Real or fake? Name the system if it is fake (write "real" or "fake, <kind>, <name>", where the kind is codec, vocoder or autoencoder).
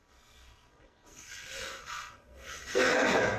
fake, codec, SNAC